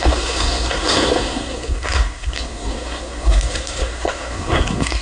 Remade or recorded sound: remade